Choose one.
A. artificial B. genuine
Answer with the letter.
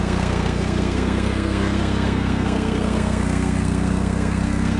A